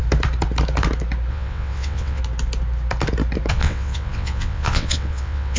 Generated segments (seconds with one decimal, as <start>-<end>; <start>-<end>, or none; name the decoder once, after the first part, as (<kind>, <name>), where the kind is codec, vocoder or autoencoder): 1.3-2.2 (vocoder, WaveNeXt); 3.5-5.6